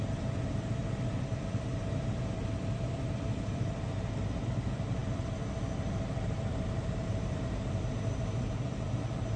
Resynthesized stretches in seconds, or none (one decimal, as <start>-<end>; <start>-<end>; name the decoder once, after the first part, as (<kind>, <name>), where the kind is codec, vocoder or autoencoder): 0.0-9.4 (vocoder, BigVGAN v2)